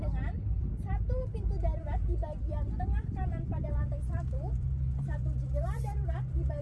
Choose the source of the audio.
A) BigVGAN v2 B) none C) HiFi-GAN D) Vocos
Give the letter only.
A